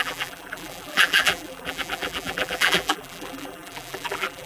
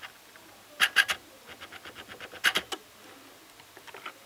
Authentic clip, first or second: second